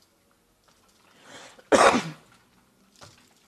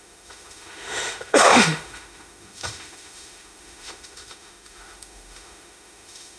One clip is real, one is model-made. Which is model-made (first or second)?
second